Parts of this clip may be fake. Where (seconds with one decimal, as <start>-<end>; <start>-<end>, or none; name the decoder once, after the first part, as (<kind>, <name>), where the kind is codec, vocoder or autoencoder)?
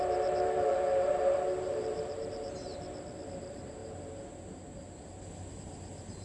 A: 0.0-2.7 (vocoder, BigVGAN v2); 3.4-3.8; 5.6-6.2